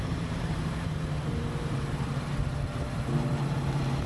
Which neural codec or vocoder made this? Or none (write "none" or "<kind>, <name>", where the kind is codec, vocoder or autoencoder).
vocoder, BigVGAN v2